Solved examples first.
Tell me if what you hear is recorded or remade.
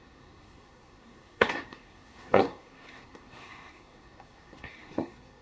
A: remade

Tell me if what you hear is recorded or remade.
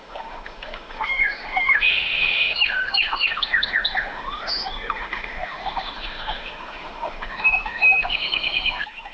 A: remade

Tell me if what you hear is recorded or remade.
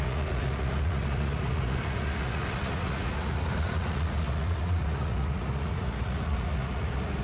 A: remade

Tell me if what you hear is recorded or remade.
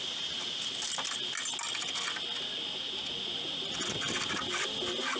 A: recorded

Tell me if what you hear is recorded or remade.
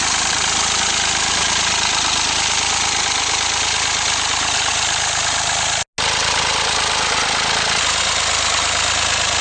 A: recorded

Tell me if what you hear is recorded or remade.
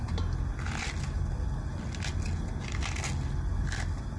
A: recorded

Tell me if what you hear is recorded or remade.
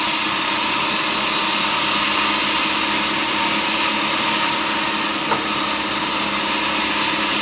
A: recorded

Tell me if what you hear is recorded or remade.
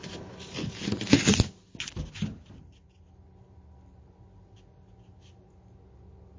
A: recorded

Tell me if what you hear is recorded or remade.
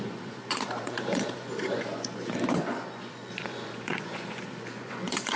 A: remade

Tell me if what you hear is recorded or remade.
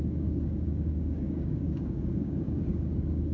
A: remade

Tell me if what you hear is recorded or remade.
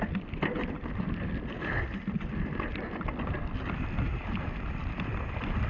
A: recorded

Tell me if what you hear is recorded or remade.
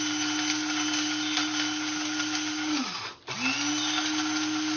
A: recorded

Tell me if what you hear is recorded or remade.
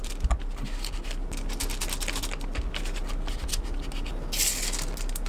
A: recorded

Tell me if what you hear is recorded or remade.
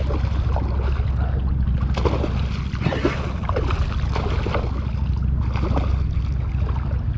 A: recorded